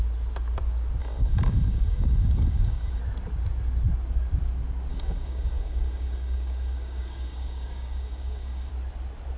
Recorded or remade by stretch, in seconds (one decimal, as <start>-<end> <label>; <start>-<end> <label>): 0.0-1.0 recorded; 1.0-3.0 remade; 3.0-4.9 recorded; 4.9-8.7 remade; 8.7-9.4 recorded